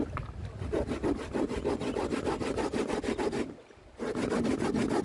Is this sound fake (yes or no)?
no